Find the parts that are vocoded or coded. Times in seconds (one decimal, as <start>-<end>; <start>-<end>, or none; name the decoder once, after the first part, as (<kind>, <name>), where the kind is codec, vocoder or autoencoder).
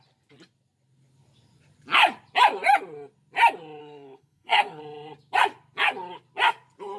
3.8-4.8 (codec, SNAC)